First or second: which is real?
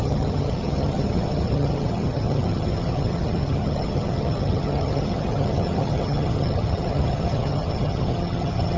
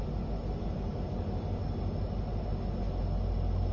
second